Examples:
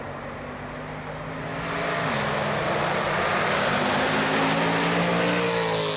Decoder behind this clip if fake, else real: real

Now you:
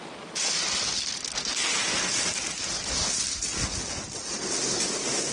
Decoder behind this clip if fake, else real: real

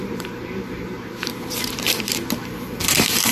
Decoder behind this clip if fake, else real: fake, vocoder, BigVGAN v2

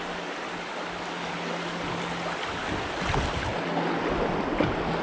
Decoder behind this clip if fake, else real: real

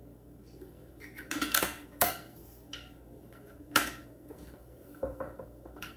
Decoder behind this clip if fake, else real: fake, codec, SNAC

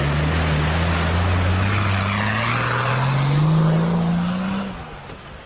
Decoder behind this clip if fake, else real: real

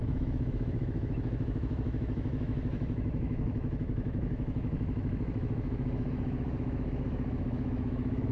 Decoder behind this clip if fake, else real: fake, autoencoder, DAC-VAE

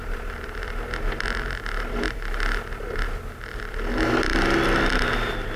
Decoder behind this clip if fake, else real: real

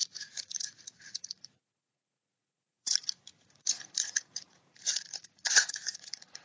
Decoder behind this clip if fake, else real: fake, vocoder, Vocos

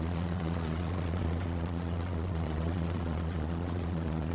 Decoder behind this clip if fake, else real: fake, vocoder, Vocos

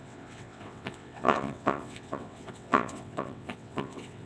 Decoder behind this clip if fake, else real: fake, vocoder, WaveNeXt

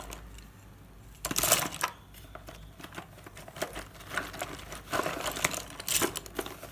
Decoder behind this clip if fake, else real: real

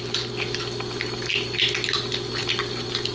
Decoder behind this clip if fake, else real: real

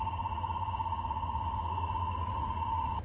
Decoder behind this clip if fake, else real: fake, vocoder, Vocos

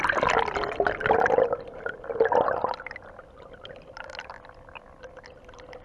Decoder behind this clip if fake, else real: real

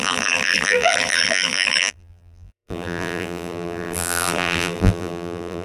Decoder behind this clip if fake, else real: fake, vocoder, BigVGAN v2